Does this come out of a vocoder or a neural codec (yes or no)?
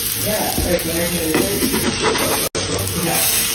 no